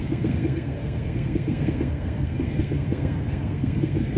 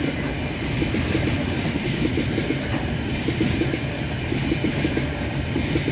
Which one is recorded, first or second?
second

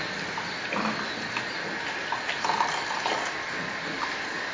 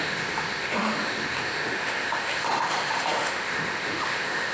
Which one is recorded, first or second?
first